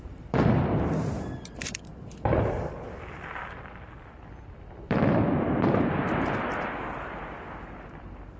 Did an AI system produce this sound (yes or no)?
yes